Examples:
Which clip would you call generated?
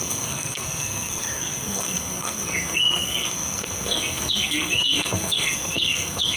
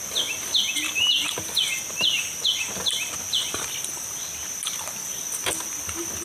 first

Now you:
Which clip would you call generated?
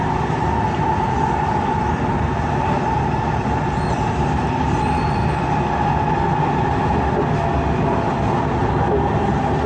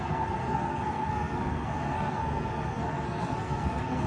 second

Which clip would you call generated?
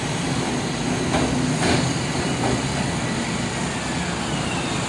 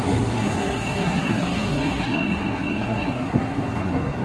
second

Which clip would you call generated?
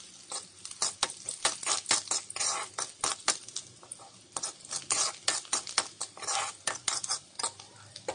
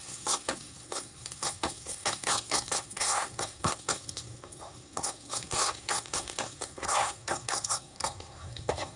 second